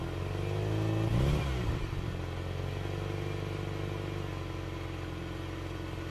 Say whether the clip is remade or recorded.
recorded